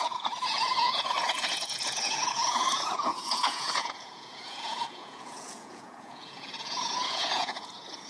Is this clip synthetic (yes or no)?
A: yes